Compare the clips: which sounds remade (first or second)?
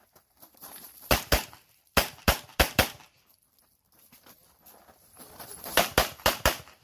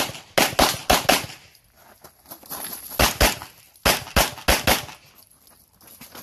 first